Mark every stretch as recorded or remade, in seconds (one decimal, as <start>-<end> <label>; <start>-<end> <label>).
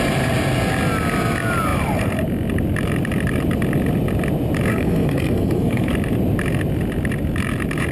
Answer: 0.0-4.7 recorded; 4.7-5.9 remade; 5.9-7.9 recorded